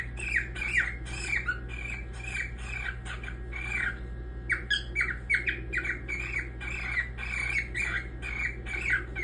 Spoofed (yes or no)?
no